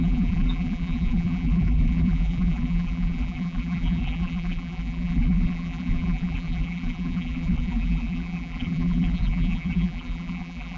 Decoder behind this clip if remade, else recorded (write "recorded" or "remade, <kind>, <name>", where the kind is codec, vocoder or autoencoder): remade, vocoder, BigVGAN v2